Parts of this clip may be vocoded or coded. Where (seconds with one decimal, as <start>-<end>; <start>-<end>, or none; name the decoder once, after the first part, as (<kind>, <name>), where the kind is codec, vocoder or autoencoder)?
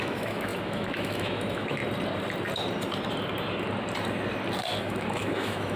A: 0.0-1.8 (autoencoder, DAC-VAE); 4.8-5.8